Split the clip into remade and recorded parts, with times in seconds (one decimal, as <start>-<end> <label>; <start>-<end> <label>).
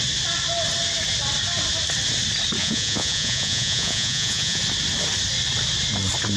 0.0-2.6 recorded; 2.6-4.6 remade; 4.6-6.4 recorded